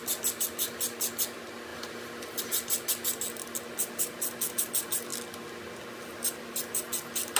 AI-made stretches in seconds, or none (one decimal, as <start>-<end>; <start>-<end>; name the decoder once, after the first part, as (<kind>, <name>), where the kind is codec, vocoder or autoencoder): none